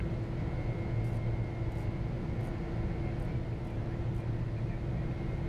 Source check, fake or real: real